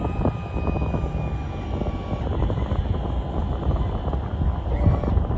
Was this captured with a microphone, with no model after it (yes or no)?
yes